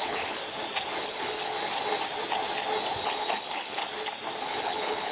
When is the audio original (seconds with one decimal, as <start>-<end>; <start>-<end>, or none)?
0.4-1.0; 1.5-3.0; 3.8-4.4